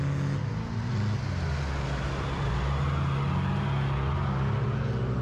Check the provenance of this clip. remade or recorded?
recorded